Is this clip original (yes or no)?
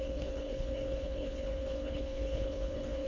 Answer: no